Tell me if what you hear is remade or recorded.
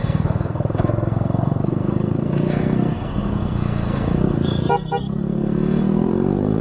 remade